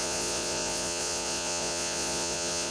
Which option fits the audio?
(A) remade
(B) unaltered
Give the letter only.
A